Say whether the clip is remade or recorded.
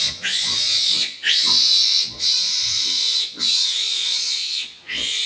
remade